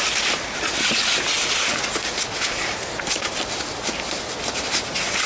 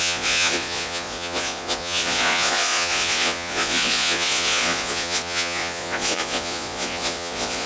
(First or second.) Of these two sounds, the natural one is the first